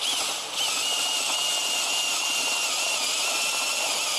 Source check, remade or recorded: recorded